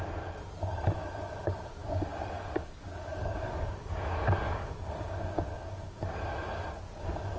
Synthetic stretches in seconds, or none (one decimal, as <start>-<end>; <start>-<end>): 1.8-6.2